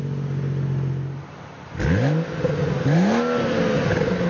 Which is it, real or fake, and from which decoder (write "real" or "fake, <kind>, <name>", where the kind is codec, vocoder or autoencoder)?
real